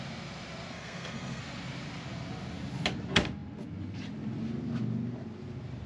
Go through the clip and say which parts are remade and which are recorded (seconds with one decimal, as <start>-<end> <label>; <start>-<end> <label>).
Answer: 0.0-0.7 recorded; 0.7-1.4 remade; 1.4-5.9 recorded